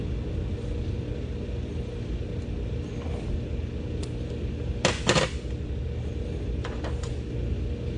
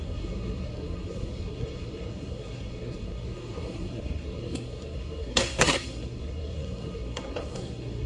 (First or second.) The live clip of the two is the first